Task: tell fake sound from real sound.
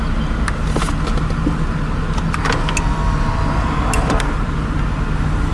real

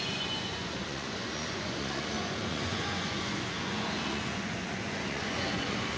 fake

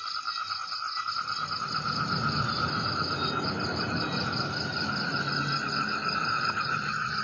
real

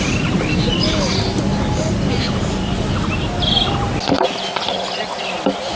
real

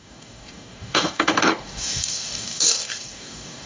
fake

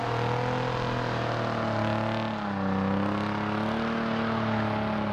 real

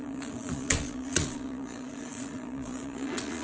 fake